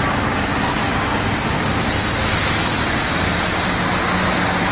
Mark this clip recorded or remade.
recorded